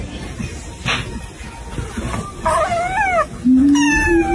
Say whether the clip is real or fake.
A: real